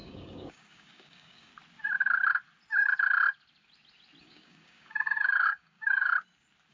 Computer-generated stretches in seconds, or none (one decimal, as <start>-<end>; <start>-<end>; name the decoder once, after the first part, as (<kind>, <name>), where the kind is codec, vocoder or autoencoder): 0.0-1.5 (codec, DAC); 4.2-6.1